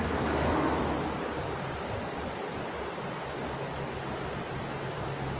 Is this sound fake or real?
real